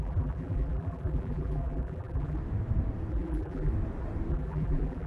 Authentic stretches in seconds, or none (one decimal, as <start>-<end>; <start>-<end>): 2.4-3.1; 3.7-4.3